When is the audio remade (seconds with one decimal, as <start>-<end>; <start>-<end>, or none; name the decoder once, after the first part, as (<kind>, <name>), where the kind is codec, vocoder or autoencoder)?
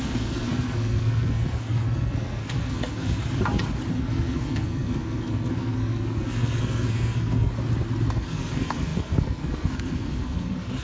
0.0-3.2 (codec, SNAC); 3.9-7.5; 8.1-10.8